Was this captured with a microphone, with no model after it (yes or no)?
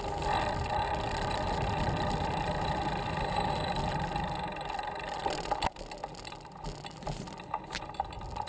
yes